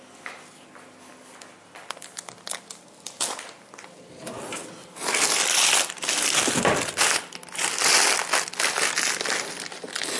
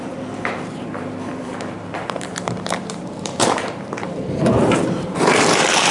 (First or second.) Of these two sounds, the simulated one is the second